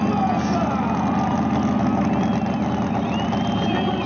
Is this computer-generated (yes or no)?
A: no